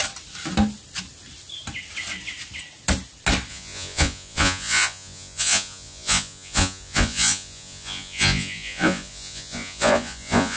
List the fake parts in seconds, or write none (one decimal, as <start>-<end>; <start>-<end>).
3.5-10.6